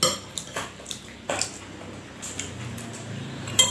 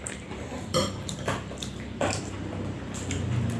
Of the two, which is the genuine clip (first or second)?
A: first